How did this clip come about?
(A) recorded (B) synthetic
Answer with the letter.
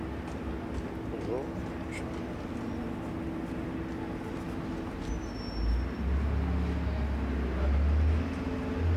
A